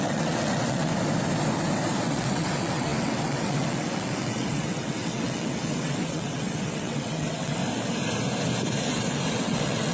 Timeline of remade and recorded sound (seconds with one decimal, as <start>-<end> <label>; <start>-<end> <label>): 0.0-0.9 remade; 0.9-2.0 recorded; 2.0-7.6 remade; 7.6-9.3 recorded; 9.3-9.9 remade